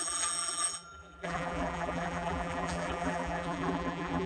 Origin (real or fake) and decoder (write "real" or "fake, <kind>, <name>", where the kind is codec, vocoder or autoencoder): fake, vocoder, BigVGAN v2